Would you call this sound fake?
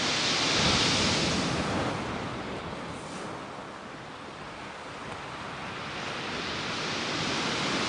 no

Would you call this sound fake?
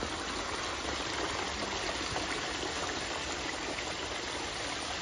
no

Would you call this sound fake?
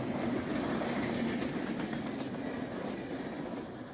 no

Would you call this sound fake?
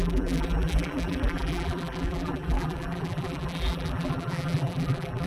yes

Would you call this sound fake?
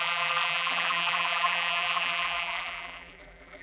yes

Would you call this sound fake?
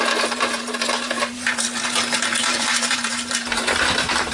yes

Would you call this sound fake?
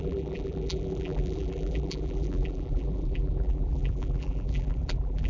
yes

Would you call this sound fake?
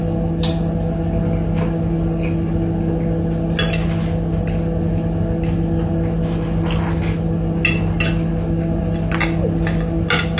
no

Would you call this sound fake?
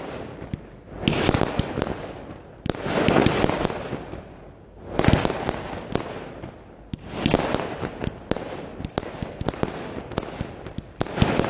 no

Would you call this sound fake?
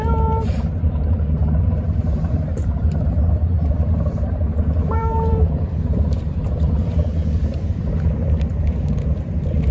yes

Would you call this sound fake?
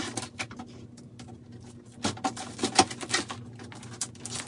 no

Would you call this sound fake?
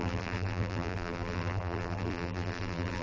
yes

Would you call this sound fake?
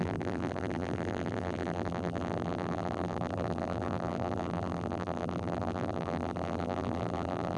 yes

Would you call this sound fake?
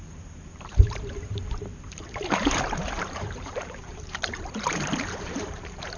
yes